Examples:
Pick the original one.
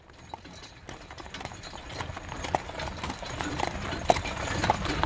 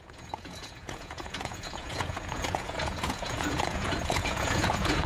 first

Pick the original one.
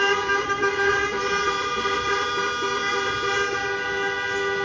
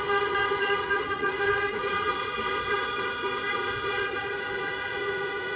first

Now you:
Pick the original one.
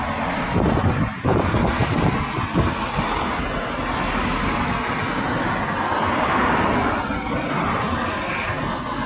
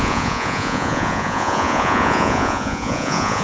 first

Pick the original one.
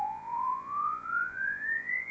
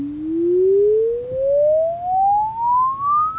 second